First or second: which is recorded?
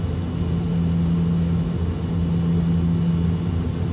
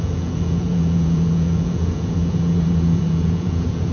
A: first